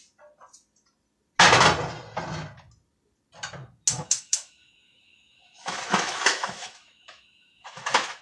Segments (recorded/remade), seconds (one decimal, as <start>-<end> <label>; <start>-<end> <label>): 0.0-3.9 recorded; 3.9-8.2 remade